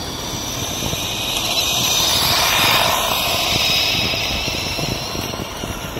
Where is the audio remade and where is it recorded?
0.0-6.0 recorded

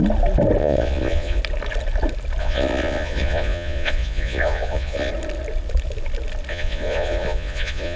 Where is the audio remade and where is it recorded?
0.0-0.6 recorded; 0.6-1.4 remade; 1.4-2.4 recorded; 2.4-5.1 remade; 5.1-6.5 recorded; 6.5-8.0 remade

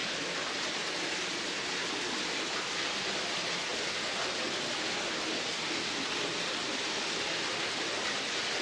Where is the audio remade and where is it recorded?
0.0-8.6 recorded